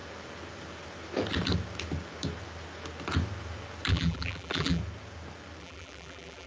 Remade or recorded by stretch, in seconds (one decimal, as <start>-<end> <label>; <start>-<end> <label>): 0.0-3.9 recorded; 3.9-4.8 remade; 4.8-5.6 recorded; 5.6-6.5 remade